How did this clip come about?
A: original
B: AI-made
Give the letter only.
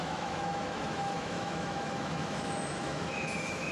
B